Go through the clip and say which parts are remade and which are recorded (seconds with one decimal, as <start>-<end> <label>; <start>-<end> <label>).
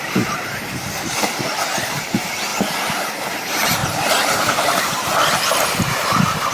0.0-2.5 remade; 2.5-3.3 recorded; 3.3-3.8 remade; 3.8-4.4 recorded; 4.4-5.1 remade; 5.1-5.7 recorded; 5.7-6.5 remade